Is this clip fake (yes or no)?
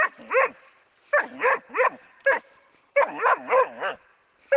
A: no